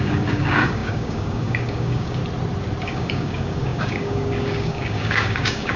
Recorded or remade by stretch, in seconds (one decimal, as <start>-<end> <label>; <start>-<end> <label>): 0.0-2.2 remade; 2.2-2.8 recorded; 2.8-5.8 remade